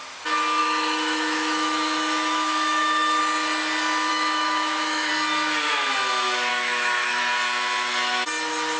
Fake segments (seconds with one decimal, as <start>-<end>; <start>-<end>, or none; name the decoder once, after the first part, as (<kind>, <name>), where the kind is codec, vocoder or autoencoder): 0.6-3.2 (autoencoder, DAC-VAE); 4.1-5.1; 6.5-7.2

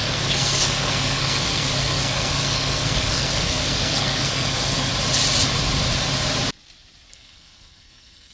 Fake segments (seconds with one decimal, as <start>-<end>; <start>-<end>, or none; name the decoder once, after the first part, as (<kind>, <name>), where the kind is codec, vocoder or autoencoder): 0.0-4.9 (codec, SNAC); 7.1-8.3

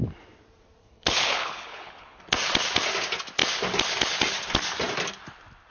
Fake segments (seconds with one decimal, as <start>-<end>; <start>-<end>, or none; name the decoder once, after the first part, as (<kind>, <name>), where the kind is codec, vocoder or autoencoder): 0.8-2.2 (codec, HILCodec)

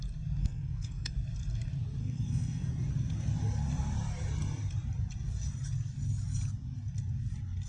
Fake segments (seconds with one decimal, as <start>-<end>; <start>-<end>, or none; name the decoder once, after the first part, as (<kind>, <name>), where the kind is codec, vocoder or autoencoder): 0.4-1.1 (codec, SNAC); 2.0-2.7

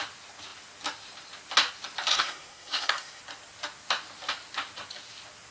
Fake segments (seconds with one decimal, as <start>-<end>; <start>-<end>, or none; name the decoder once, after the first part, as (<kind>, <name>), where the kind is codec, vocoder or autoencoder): 2.1-3.2 (codec, SNAC)

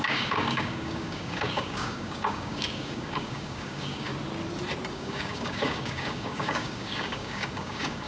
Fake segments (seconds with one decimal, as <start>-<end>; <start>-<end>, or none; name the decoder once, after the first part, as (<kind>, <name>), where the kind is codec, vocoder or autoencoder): 0.0-4.1 (codec, DAC); 4.9-8.1